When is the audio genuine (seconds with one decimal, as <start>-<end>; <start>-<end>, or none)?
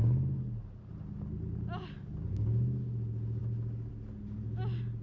0.0-5.0